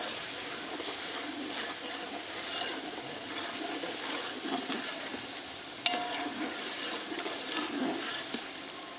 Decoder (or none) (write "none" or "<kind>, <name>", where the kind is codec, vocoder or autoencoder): none